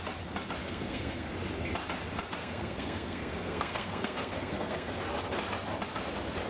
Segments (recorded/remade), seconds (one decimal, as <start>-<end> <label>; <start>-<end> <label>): 0.0-0.6 recorded; 0.6-1.3 remade; 1.3-2.4 recorded; 2.4-4.9 remade; 4.9-6.5 recorded